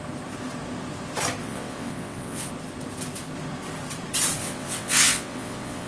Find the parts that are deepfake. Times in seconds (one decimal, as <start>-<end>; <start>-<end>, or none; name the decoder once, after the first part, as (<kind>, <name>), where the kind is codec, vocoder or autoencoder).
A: 1.4-2.5 (vocoder, WaveNeXt); 4.4-5.9